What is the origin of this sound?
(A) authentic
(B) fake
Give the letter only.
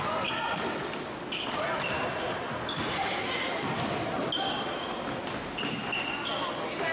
A